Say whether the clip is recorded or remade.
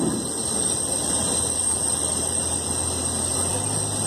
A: recorded